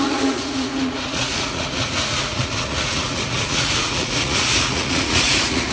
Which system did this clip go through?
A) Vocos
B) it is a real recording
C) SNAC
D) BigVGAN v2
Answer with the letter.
A